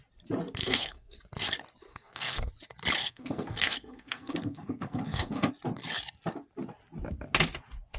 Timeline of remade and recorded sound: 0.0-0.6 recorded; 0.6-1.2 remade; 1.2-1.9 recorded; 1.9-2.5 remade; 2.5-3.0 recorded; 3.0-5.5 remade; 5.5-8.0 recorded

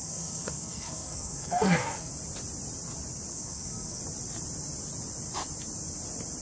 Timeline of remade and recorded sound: 0.0-2.1 remade; 2.1-3.3 recorded; 3.3-4.0 remade; 4.0-6.4 recorded

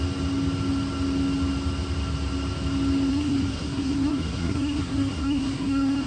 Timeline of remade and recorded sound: 0.0-3.1 recorded; 3.1-6.1 remade

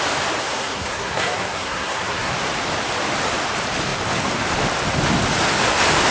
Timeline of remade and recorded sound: 0.0-0.4 recorded; 0.4-2.3 remade; 2.3-6.1 recorded

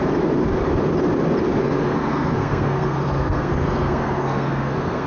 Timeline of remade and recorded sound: 0.0-1.6 recorded; 1.6-5.1 remade

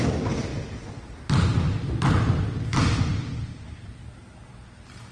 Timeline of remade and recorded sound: 0.0-5.1 recorded

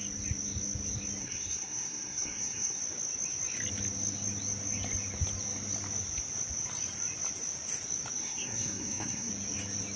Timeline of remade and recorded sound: 0.0-1.2 recorded; 1.2-2.8 remade; 2.8-8.2 recorded; 8.2-9.3 remade; 9.3-10.0 recorded

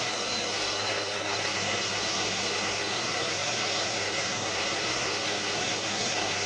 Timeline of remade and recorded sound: 0.0-6.5 remade